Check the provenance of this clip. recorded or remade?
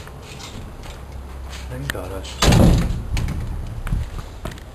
recorded